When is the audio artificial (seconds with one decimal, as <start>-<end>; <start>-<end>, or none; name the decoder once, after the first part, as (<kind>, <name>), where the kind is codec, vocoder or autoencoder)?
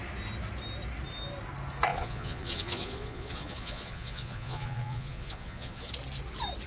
1.9-5.9 (vocoder, Vocos)